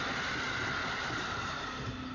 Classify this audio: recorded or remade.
recorded